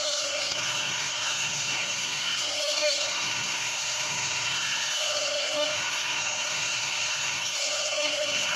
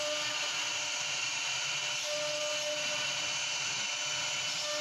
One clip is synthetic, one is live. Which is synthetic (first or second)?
first